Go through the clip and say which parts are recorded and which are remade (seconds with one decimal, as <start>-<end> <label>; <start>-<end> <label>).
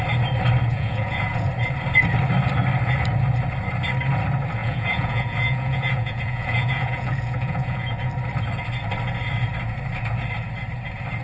0.0-0.7 recorded; 0.7-1.5 remade; 1.5-4.6 recorded; 4.6-8.1 remade; 8.1-11.2 recorded